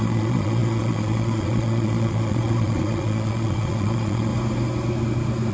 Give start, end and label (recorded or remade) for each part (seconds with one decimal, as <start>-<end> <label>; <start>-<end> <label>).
0.0-4.3 remade; 4.3-5.5 recorded